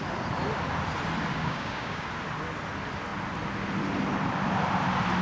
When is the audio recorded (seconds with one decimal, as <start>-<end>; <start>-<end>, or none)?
0.0-1.3; 2.1-5.2